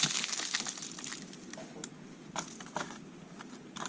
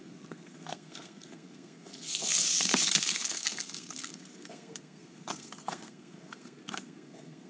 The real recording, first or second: first